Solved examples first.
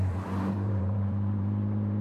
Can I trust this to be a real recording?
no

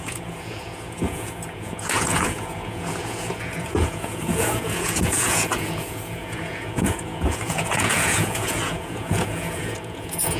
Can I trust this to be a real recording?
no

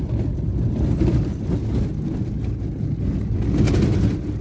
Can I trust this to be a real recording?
yes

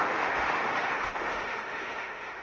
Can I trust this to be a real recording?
no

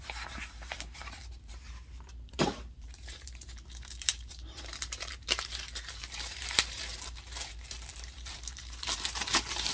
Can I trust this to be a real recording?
no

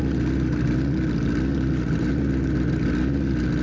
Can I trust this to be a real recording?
yes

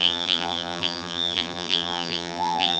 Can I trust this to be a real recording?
no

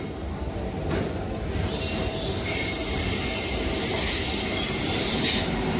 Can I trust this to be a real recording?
yes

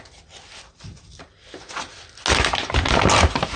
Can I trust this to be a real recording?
yes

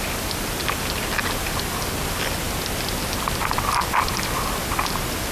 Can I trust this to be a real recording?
yes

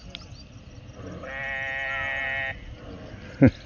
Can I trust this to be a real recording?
yes